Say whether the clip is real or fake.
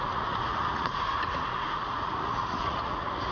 fake